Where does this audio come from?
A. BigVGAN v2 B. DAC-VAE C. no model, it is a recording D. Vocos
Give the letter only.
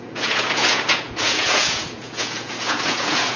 D